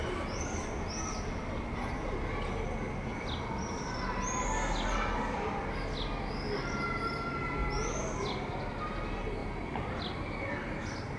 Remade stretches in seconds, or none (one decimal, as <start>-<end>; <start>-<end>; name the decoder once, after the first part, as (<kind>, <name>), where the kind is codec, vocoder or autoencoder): none